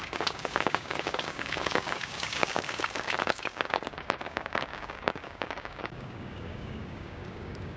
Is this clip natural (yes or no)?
no